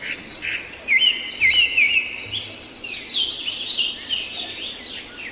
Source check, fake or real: real